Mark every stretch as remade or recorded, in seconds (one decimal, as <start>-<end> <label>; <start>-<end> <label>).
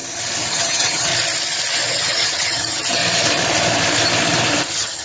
0.0-0.5 recorded; 0.5-1.1 remade; 1.1-1.9 recorded; 1.9-3.0 remade; 3.0-4.6 recorded; 4.6-5.0 remade